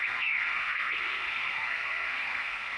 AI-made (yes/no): yes